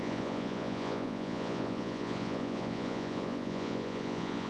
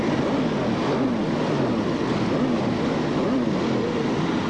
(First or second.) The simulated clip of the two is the first